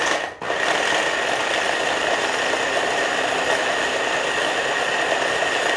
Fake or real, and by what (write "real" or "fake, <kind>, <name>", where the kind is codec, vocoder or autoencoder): real